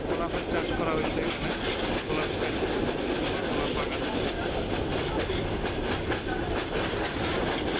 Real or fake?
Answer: real